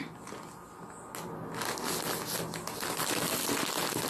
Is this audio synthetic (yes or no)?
no